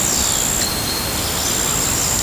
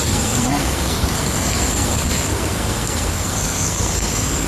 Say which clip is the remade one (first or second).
second